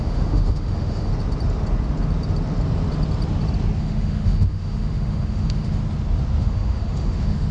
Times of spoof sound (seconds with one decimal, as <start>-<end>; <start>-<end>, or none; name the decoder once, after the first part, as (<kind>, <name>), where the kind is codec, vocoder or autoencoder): 0.0-1.1 (autoencoder, DAC-VAE); 3.8-5.8; 6.4-7.5